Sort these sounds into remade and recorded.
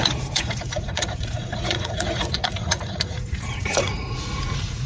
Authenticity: remade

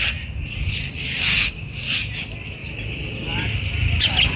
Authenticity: recorded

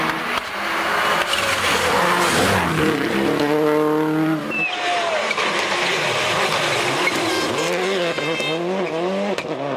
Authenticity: recorded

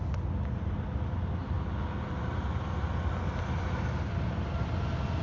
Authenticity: recorded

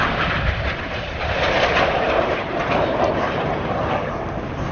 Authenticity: remade